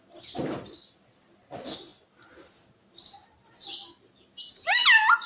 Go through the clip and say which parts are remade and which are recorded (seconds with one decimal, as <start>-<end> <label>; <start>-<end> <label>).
0.0-5.3 recorded

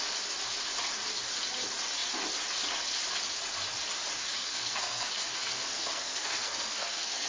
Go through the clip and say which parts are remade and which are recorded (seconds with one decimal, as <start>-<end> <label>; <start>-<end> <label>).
0.0-4.2 recorded; 4.2-7.3 remade

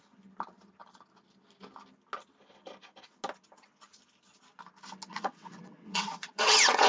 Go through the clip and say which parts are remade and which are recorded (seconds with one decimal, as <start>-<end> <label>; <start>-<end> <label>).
0.0-5.1 recorded; 5.1-6.9 remade

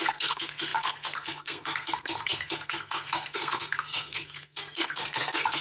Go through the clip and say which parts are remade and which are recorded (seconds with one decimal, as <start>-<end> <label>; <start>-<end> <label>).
0.0-5.6 remade

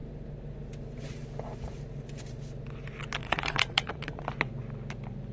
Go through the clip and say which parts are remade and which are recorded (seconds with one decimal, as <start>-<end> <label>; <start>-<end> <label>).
0.0-3.2 recorded; 3.2-4.2 remade; 4.2-5.3 recorded

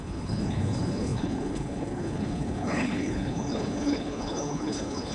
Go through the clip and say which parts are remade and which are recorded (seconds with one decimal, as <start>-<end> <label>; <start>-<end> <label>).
0.0-5.1 remade